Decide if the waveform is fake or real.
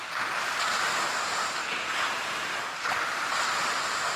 real